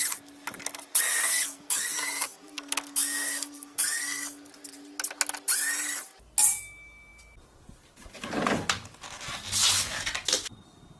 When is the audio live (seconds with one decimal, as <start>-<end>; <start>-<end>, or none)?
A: 0.0-1.1; 4.5-11.0